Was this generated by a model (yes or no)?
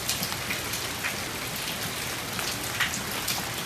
no